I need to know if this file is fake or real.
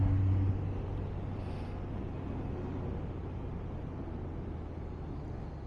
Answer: real